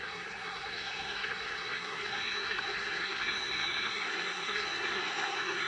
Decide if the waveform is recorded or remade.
remade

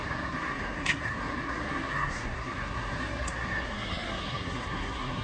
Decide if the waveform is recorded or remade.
remade